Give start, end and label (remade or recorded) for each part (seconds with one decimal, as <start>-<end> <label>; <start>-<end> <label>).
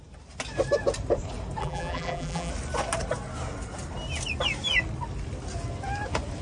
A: 0.0-1.6 recorded; 1.6-2.5 remade; 2.5-6.4 recorded